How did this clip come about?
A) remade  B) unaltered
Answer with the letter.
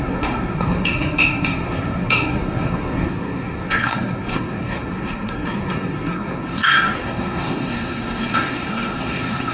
A